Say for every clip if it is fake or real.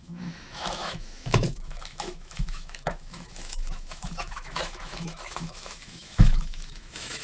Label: fake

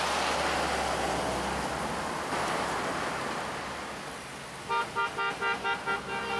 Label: real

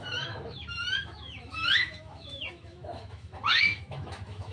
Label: fake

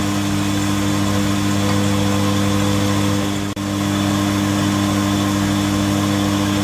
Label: real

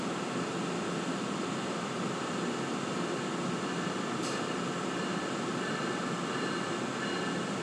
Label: real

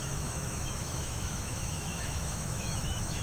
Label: fake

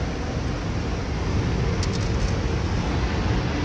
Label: real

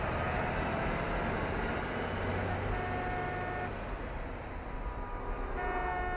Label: real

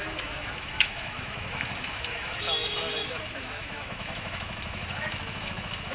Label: fake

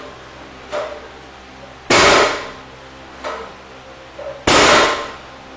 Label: real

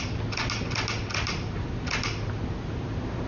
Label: real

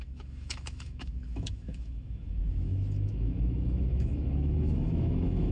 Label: fake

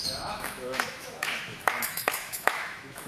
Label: fake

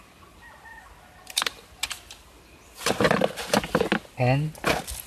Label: real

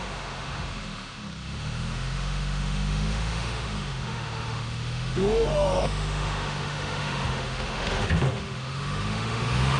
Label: fake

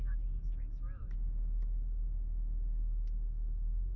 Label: fake